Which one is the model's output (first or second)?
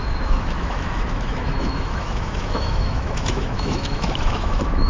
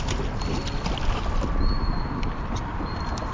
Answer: first